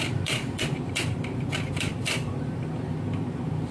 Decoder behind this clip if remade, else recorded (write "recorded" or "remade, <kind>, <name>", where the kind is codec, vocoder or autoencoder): remade, vocoder, BigVGAN v2